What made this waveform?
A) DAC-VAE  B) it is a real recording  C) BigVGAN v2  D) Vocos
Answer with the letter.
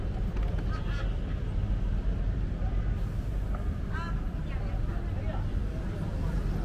B